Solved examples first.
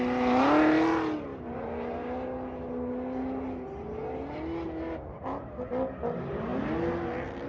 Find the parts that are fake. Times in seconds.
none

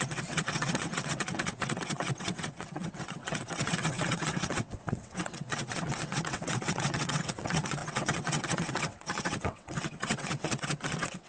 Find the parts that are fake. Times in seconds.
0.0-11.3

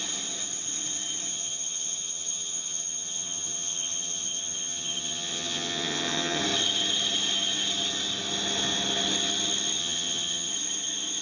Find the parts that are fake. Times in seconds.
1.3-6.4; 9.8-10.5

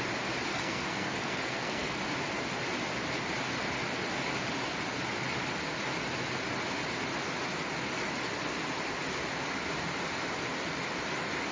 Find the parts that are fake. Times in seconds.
0.5-2.0

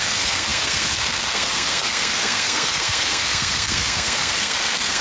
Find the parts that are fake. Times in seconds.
0.0-5.0

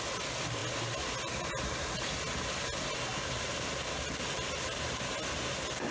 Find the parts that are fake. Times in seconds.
none